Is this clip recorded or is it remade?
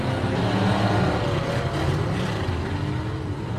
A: recorded